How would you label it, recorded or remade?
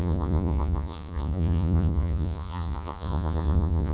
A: remade